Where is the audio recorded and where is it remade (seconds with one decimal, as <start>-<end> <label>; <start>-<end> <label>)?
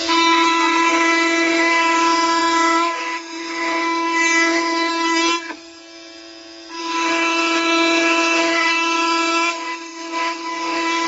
0.0-0.9 recorded; 0.9-4.9 remade; 4.9-6.8 recorded; 6.8-11.1 remade